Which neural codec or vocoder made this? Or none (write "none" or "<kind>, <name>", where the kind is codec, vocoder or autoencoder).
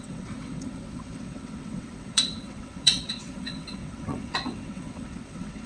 vocoder, WaveNeXt